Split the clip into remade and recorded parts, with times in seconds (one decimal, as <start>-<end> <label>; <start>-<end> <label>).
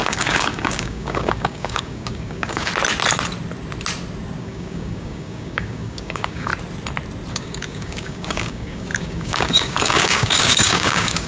0.0-2.7 remade; 2.7-4.4 recorded; 4.4-6.5 remade; 6.5-7.3 recorded; 7.3-11.3 remade